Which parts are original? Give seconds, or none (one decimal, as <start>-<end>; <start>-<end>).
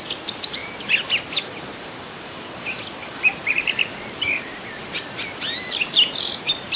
none